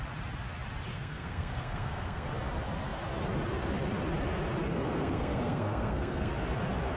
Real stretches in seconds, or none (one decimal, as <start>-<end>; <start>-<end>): 0.0-0.9; 2.3-4.7; 6.3-7.0